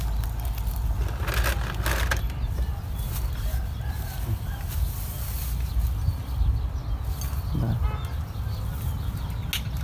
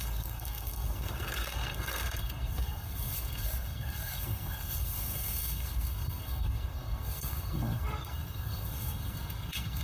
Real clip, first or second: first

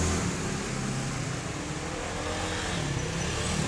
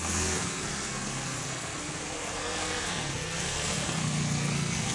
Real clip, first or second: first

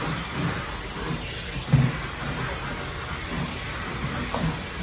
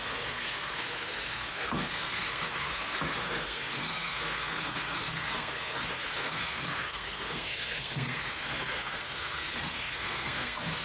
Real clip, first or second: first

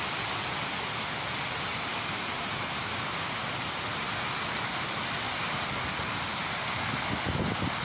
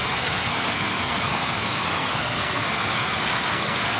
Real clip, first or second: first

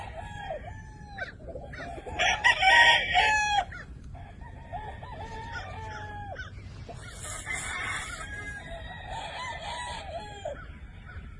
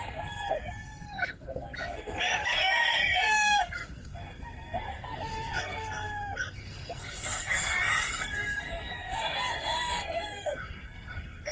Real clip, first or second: first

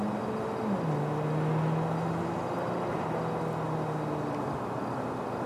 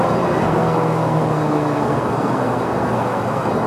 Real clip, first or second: first